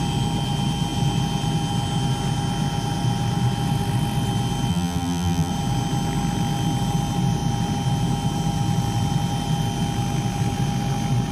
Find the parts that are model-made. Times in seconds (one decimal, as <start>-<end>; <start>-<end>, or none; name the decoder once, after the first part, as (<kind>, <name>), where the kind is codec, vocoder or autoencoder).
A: 4.7-5.5 (vocoder, BigVGAN v2)